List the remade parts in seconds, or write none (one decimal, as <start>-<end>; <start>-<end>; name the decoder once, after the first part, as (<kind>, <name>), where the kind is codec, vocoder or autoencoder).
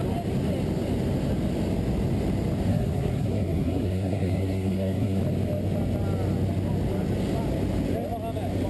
2.7-5.2 (codec, SNAC)